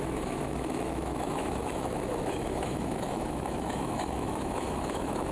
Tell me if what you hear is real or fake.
fake